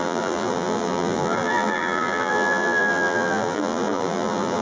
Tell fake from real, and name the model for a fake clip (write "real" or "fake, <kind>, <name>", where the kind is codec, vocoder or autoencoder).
fake, vocoder, BigVGAN v2